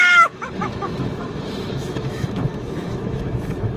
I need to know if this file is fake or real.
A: fake